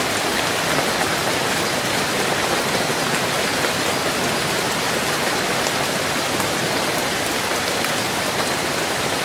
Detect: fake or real real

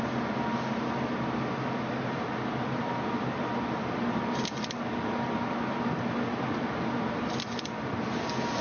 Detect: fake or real real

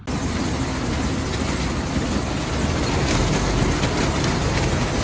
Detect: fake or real real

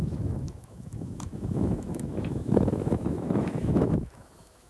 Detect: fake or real fake